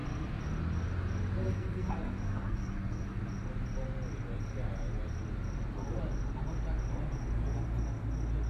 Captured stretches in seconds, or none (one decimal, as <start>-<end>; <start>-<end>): 0.0-1.4; 3.2-8.5